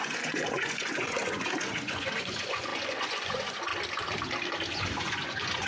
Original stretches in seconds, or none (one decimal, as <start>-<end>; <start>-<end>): 3.7-4.7